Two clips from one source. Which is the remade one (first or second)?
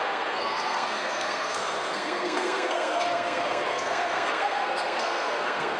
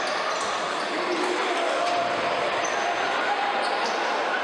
first